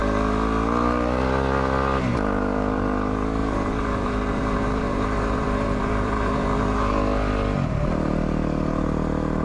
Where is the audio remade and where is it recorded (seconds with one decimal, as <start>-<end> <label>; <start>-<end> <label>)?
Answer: 0.0-3.4 recorded; 3.4-6.9 remade; 6.9-9.4 recorded